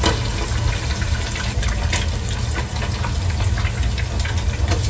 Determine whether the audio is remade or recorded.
recorded